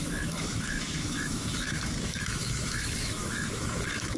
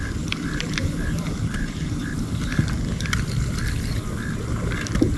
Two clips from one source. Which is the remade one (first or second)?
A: first